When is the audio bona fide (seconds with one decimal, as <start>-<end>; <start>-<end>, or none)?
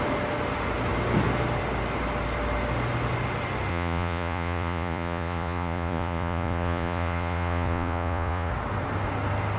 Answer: 0.0-3.7; 8.5-9.6